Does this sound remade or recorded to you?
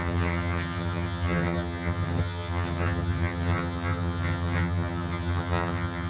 remade